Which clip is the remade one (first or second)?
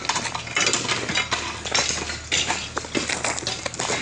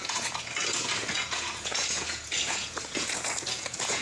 second